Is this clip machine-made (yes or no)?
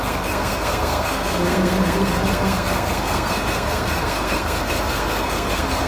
yes